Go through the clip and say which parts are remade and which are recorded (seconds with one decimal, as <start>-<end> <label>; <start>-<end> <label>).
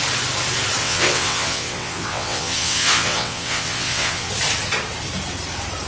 0.0-0.8 recorded; 0.8-4.3 remade; 4.3-5.9 recorded